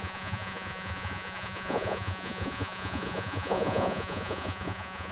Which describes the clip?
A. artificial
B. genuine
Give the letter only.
A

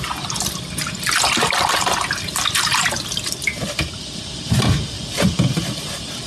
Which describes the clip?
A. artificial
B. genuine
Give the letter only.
B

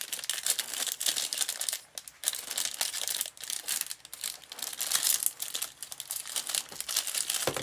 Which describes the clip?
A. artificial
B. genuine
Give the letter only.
B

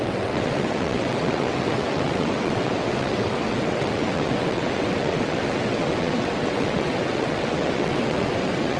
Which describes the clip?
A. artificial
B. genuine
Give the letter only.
A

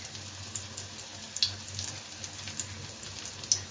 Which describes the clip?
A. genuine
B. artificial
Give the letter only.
A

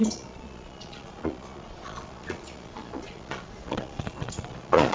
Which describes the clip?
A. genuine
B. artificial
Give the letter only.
B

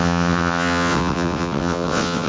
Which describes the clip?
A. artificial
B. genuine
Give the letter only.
A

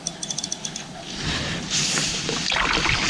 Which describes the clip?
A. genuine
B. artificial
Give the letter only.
A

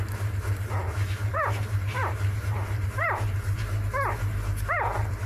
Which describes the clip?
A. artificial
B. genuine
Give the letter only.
A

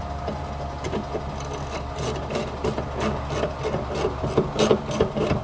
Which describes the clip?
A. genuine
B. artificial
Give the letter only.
A